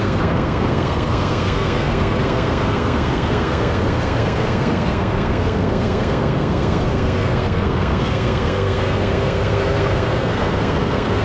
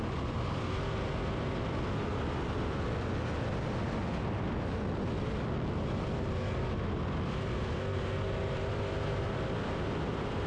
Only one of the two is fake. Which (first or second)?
first